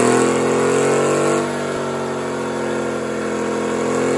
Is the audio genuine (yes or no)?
yes